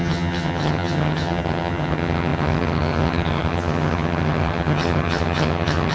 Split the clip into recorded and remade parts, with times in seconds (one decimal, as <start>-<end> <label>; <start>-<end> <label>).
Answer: 0.0-5.9 remade